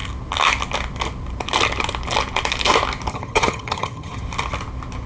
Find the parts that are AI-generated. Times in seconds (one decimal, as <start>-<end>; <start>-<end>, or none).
3.1-4.2